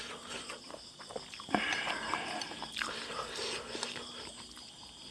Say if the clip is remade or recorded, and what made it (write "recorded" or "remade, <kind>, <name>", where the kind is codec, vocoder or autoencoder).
recorded